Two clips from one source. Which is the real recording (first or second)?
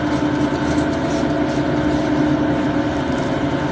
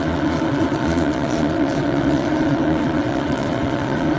first